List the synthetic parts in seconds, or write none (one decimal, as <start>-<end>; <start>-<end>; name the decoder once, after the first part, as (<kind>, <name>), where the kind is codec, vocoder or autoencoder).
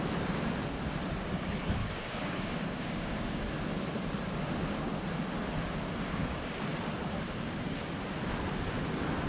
1.8-3.4 (codec, DAC)